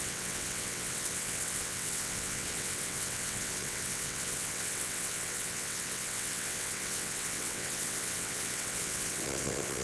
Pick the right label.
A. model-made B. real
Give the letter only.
A